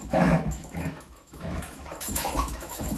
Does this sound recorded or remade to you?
remade